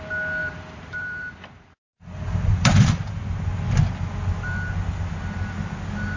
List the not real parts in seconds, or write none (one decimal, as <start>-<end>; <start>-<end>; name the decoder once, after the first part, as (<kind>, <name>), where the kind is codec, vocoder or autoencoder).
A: 0.4-3.1 (vocoder, BigVGAN v2)